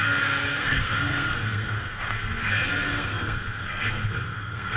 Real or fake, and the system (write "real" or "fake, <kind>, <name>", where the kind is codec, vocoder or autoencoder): fake, codec, SNAC